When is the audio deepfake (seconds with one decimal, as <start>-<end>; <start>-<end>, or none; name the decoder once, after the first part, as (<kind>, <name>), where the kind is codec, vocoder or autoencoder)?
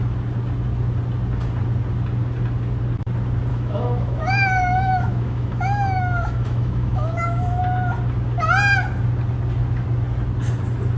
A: 3.5-7.6 (autoencoder, DAC-VAE)